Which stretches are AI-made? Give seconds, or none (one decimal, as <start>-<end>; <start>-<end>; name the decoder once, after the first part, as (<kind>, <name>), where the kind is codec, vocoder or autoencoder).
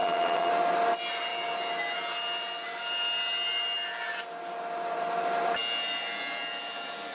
0.0-0.5 (vocoder, HiFi-GAN)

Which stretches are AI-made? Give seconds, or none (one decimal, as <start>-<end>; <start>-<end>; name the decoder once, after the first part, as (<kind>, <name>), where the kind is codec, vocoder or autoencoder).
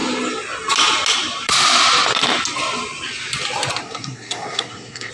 3.8-5.1 (codec, SNAC)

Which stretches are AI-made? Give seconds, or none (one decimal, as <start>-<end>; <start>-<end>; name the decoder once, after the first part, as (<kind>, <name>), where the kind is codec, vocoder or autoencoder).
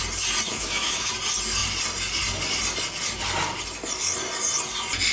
0.5-1.1 (autoencoder, DAC-VAE)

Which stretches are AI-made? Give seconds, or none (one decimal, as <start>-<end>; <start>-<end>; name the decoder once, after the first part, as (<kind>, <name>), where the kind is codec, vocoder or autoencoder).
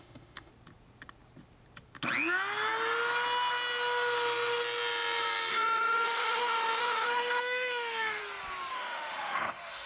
0.0-0.5 (autoencoder, DAC-VAE); 5.5-8.2; 8.7-9.9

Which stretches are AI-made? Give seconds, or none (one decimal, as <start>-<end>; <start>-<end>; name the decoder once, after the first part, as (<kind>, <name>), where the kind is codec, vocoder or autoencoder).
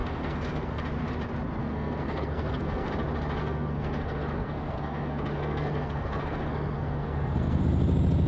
0.0-0.8 (codec, SNAC); 1.6-2.9; 3.4-7.6